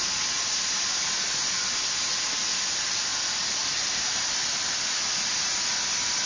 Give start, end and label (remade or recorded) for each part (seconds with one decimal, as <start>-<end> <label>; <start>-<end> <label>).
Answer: 0.0-6.3 recorded